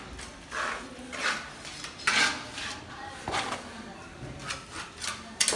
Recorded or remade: recorded